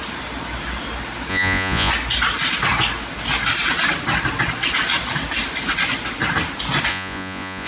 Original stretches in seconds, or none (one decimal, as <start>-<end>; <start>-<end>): 0.0-1.3; 1.9-6.9